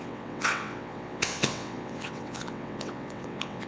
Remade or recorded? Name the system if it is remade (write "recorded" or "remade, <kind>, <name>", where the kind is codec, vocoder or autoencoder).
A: remade, vocoder, WaveNeXt